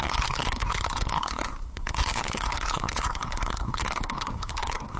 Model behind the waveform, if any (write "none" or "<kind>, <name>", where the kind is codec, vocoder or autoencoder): codec, SNAC